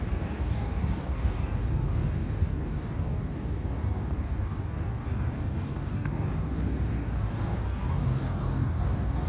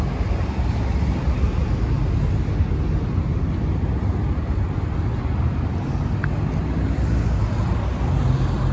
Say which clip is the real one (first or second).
second